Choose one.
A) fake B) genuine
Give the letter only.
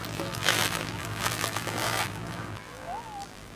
A